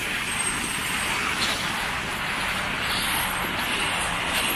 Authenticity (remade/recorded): recorded